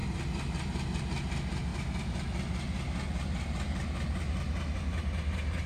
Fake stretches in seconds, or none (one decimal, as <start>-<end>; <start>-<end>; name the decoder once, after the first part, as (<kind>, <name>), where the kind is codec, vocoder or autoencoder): none